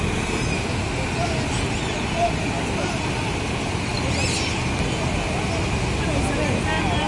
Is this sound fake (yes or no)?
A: no